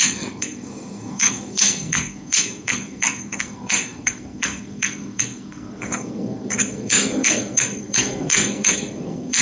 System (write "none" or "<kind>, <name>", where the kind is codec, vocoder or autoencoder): codec, SNAC